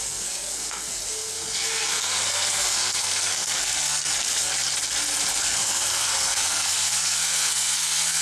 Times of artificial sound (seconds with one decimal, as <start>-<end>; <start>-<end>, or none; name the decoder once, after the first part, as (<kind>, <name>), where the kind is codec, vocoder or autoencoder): 0.0-4.5 (codec, SNAC); 5.4-8.2